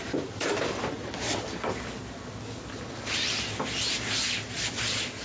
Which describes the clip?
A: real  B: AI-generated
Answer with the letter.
A